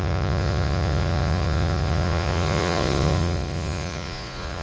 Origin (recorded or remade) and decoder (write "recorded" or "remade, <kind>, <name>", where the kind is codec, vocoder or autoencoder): remade, vocoder, Vocos